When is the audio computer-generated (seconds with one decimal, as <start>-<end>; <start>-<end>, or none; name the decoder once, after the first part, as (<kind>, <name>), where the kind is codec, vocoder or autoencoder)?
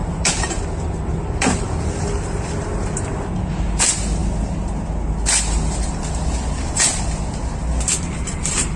none